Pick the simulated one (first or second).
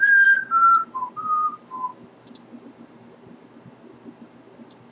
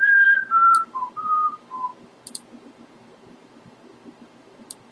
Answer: second